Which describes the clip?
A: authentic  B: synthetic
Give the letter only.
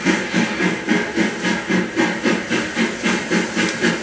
A